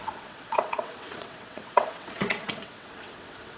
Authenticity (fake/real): fake